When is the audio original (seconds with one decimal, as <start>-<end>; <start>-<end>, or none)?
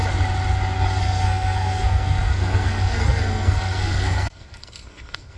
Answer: 0.0-1.0